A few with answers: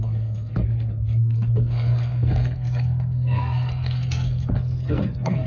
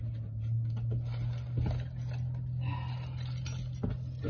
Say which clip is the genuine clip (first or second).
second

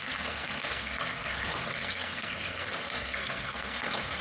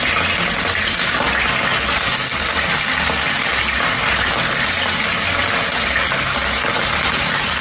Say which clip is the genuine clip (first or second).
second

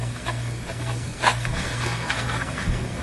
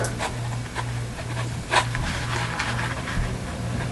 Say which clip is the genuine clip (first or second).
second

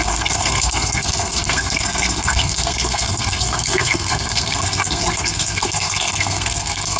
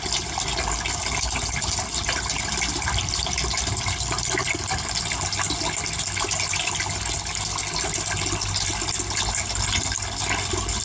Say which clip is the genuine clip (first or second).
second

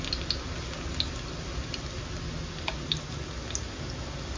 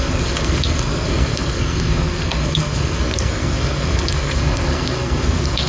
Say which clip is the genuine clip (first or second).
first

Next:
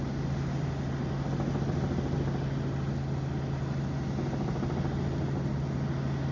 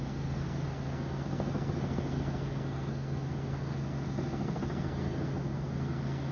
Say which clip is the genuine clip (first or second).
first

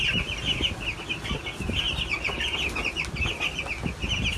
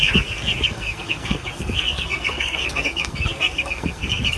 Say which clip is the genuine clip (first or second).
first